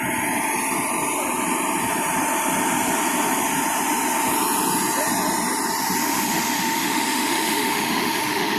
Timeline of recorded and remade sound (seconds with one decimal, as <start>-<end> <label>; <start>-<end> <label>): 0.0-6.0 recorded; 6.0-8.6 remade